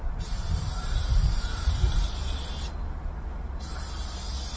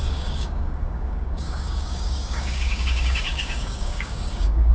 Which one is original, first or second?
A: first